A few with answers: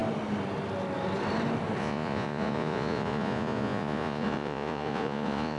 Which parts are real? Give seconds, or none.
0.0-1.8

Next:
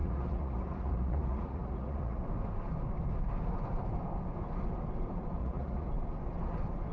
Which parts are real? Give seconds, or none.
2.2-5.4; 5.9-6.9

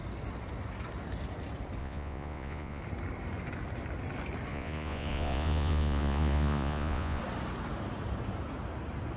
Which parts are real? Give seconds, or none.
0.0-1.8; 2.8-4.5; 7.2-9.2